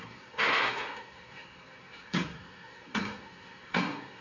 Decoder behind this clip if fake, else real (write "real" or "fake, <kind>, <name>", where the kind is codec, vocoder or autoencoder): fake, codec, SNAC